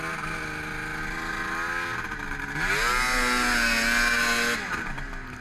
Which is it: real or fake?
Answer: real